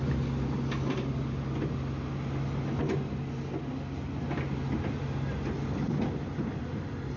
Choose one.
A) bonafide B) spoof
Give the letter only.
A